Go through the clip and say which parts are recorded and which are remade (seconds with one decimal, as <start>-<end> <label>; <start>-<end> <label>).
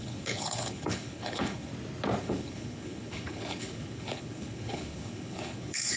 0.0-1.7 remade; 1.7-2.2 recorded; 2.2-6.0 remade